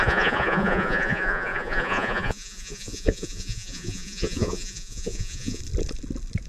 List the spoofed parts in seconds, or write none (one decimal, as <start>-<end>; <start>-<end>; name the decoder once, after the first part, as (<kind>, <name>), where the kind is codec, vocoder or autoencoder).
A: 0.0-5.6 (vocoder, Vocos)